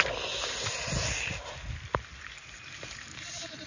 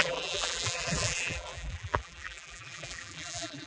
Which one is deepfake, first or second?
second